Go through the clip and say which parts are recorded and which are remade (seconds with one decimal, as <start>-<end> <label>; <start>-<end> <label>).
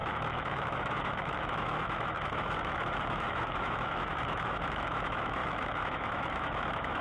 0.0-7.0 remade